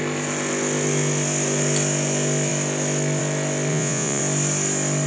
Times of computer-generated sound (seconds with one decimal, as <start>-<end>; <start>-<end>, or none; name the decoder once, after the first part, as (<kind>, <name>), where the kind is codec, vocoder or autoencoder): 3.7-4.2 (vocoder, Vocos)